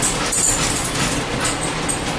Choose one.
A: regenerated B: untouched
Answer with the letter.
B